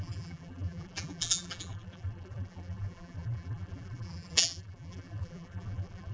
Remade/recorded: remade